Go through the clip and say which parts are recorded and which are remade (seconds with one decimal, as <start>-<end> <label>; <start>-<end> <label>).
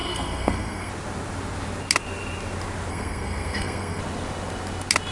0.0-0.9 remade; 0.9-2.9 recorded; 2.9-4.0 remade; 4.0-5.1 recorded